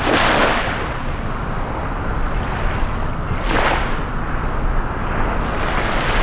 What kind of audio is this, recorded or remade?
recorded